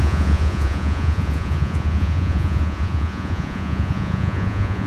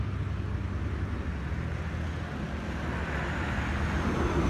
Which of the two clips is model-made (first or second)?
first